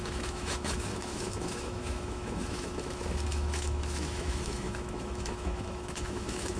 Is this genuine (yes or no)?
no